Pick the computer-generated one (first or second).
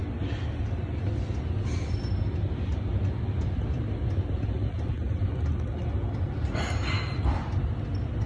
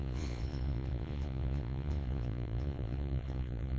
second